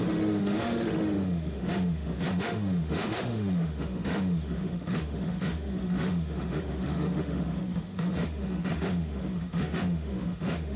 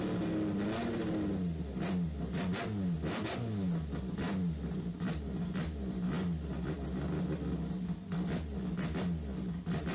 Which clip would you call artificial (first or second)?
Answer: first